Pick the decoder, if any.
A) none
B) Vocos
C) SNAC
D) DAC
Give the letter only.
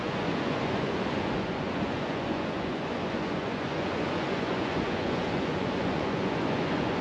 B